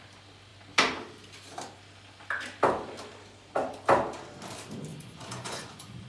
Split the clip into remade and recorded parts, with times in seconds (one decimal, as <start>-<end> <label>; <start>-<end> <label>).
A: 0.0-4.9 recorded; 4.9-6.1 remade